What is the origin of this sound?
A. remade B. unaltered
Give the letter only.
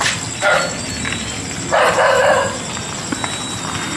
B